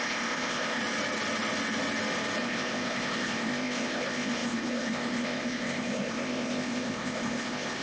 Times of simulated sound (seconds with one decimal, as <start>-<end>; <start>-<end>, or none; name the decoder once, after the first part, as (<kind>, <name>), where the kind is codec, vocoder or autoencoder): 0.0-0.8 (codec, ZipCodec); 2.4-7.8